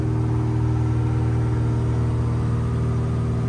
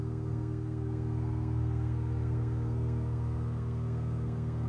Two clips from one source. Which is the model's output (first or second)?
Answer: second